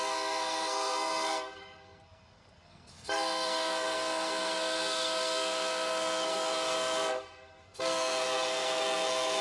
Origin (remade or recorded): remade